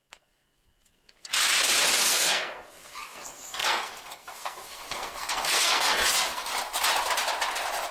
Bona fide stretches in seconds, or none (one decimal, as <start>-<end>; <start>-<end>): 1.3-2.0; 6.5-7.9